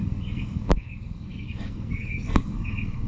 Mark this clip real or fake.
fake